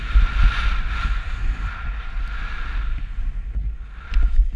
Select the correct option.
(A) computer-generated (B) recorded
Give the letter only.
B